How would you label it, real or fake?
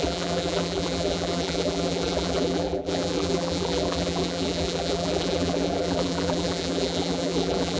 fake